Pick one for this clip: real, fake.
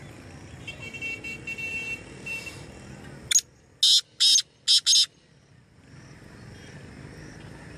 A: real